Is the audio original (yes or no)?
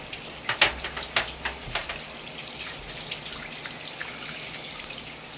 yes